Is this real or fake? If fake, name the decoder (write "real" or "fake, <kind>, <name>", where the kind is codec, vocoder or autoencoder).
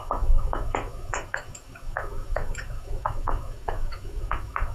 fake, autoencoder, DAC-VAE